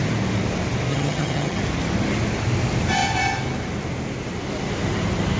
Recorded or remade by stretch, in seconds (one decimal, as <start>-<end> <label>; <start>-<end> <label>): 0.0-0.9 recorded; 0.9-1.6 remade; 1.6-5.4 recorded

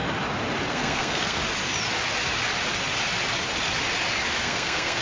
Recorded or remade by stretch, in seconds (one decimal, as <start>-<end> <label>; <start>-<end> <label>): 0.0-0.7 recorded; 0.7-1.4 remade; 1.4-4.4 recorded; 4.4-5.0 remade

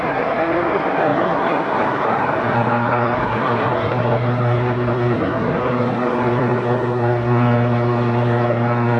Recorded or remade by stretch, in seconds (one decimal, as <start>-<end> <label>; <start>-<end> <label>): 0.0-9.0 remade

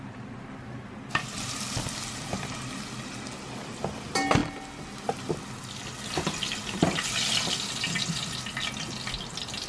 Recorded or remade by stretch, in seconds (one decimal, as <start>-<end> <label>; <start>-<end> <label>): 0.0-9.7 recorded